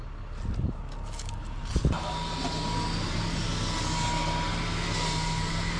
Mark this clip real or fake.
real